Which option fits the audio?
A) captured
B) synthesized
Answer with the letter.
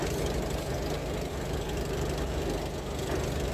A